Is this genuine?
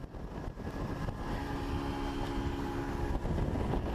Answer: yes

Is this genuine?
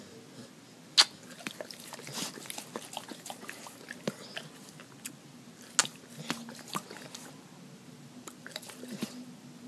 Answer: yes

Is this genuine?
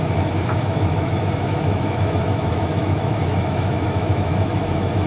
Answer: no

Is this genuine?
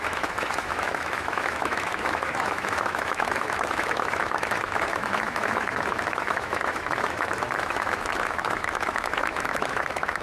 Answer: no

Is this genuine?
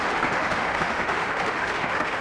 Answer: no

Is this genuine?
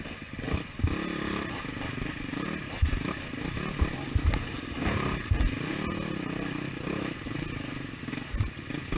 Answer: yes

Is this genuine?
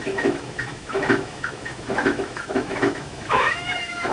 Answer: no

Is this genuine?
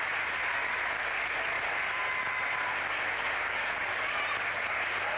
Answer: yes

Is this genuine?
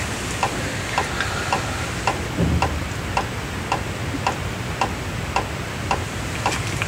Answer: yes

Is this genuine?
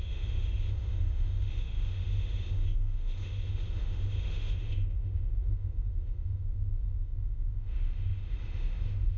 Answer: no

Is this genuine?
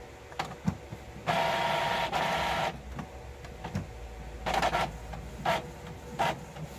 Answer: yes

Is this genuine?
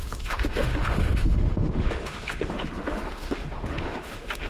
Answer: no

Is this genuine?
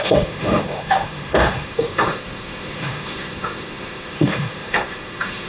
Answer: no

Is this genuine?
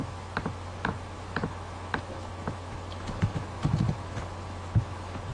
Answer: no